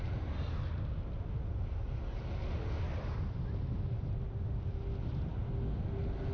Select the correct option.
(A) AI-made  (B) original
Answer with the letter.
B